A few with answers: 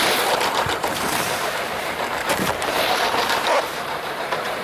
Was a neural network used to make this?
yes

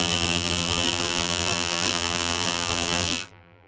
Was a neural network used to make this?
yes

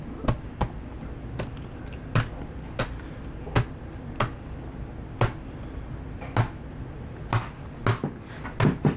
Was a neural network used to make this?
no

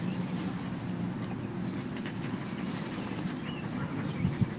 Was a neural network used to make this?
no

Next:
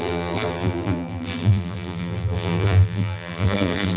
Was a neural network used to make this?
yes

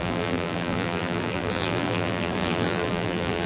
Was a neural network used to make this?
yes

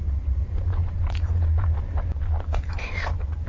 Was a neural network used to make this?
yes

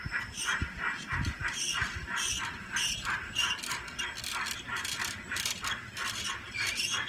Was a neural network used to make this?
no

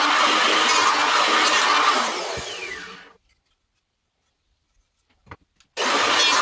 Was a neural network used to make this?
no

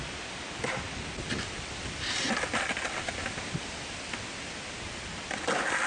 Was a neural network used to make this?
no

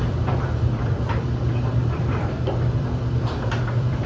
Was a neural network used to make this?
yes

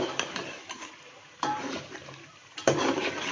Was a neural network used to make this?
yes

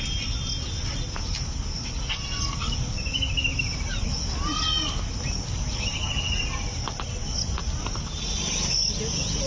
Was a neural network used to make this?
no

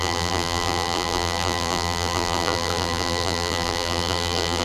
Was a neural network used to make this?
yes